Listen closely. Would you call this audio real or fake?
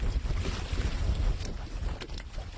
real